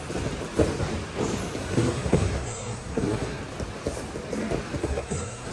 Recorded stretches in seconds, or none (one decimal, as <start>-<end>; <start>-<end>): 0.0-1.6; 3.4-4.8